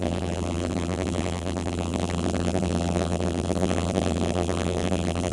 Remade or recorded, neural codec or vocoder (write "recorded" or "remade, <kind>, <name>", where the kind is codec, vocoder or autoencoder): remade, vocoder, BigVGAN v2